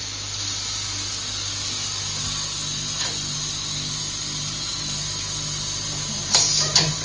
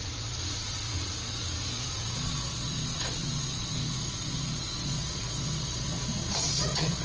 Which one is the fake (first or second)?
second